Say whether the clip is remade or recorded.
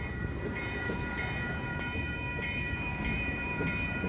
remade